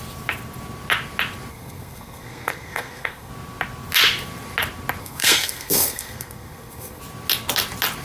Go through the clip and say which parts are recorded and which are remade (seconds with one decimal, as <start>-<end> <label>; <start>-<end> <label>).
0.0-1.5 recorded; 1.5-3.3 remade; 3.3-5.0 recorded; 5.0-7.0 remade; 7.0-8.0 recorded